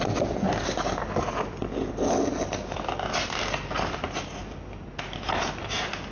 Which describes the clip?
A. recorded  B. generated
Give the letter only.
A